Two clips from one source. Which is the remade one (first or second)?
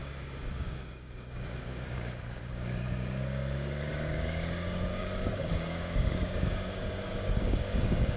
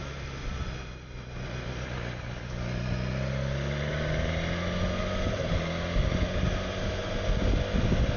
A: first